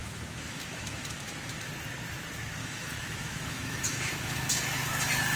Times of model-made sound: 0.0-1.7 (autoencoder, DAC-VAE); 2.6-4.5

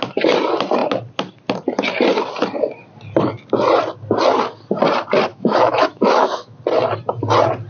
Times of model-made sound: 5.3-6.6 (autoencoder, DAC-VAE)

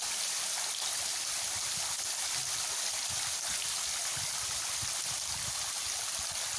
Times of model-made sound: none

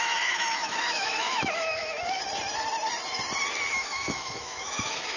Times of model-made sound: 0.0-2.2 (autoencoder, DAC-VAE); 3.7-5.2

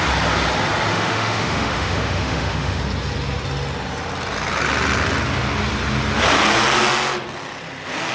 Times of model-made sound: 0.9-2.8 (autoencoder, DAC-VAE)

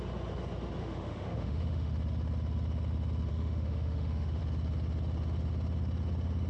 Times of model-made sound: 0.8-1.9 (autoencoder, DAC-VAE); 3.3-4.4

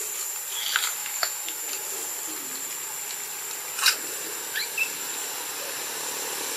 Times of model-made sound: 1.0-1.6 (autoencoder, DAC-VAE)